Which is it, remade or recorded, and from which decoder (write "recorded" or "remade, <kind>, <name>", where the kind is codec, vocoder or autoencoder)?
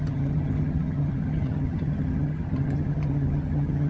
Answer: remade, vocoder, HiFi-GAN